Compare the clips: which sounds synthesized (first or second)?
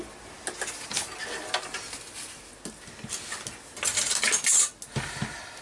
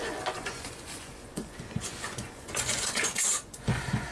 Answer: second